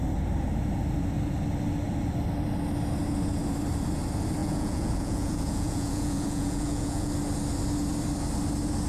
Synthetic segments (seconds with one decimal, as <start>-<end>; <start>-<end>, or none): 4.4-7.1